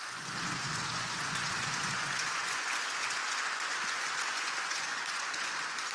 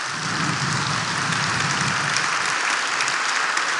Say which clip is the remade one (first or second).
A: first